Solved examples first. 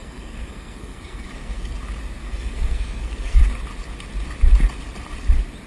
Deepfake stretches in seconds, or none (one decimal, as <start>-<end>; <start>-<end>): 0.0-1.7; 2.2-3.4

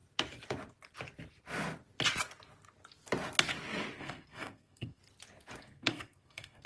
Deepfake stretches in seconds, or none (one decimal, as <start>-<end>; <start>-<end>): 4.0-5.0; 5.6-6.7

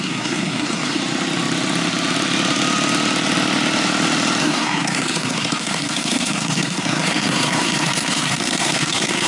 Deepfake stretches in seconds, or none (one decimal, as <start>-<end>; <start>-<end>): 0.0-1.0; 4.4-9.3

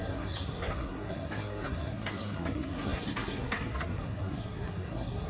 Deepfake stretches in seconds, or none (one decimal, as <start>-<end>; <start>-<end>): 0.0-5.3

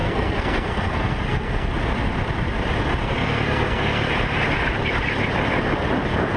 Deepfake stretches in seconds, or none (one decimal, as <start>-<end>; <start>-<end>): 0.0-1.7; 3.0-4.0